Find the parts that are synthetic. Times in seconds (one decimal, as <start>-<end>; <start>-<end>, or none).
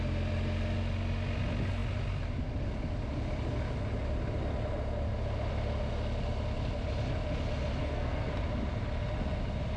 7.8-8.3